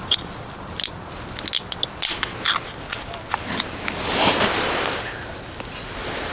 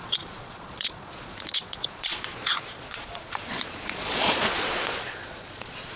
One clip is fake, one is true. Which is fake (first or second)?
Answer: second